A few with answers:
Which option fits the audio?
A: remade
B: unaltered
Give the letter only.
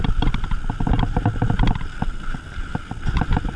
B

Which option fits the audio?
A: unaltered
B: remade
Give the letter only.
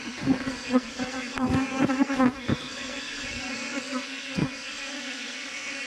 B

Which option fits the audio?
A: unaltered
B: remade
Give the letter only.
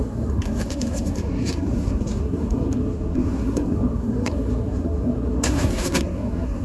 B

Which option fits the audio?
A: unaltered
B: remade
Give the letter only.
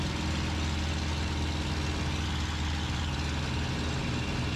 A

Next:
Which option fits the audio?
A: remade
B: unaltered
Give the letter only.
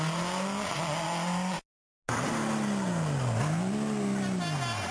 B